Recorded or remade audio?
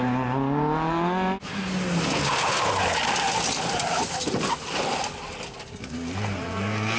recorded